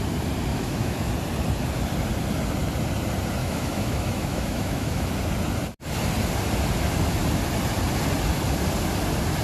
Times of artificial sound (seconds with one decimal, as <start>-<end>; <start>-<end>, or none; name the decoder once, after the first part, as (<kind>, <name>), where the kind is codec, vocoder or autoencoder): 0.5-1.1 (autoencoder, DAC-VAE); 3.4-5.1